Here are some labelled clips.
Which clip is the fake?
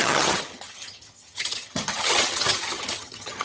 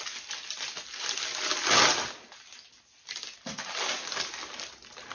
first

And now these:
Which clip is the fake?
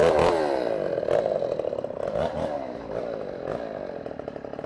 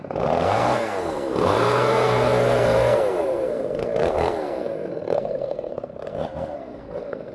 second